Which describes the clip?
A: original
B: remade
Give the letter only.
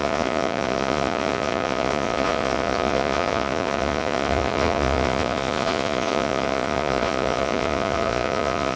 B